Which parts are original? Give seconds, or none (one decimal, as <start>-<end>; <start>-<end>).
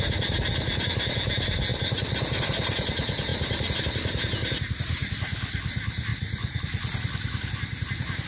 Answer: 0.0-8.3